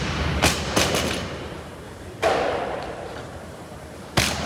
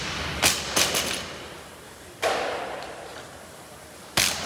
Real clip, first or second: second